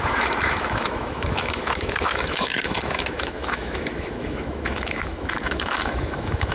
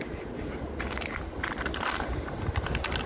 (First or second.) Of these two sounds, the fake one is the first